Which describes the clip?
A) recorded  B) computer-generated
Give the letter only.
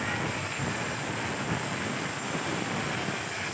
A